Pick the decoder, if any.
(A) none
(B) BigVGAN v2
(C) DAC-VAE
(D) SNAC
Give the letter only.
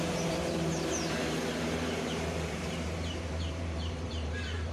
B